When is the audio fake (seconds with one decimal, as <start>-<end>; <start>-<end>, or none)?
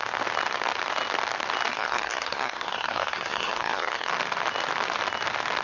1.7-4.1